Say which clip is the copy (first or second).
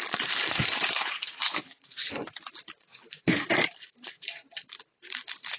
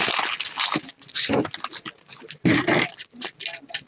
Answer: first